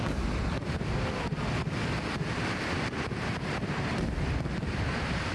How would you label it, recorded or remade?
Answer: recorded